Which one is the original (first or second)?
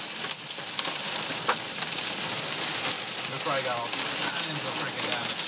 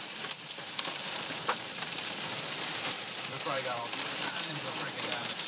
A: first